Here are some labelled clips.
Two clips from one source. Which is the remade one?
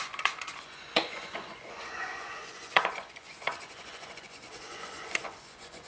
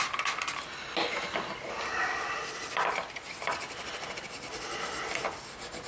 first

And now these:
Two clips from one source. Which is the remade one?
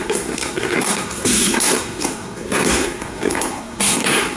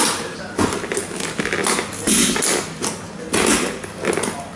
first